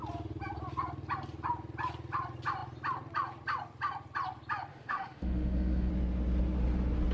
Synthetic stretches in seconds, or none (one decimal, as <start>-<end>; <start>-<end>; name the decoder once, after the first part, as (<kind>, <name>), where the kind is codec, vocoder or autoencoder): 4.7-5.9 (autoencoder, DAC-VAE)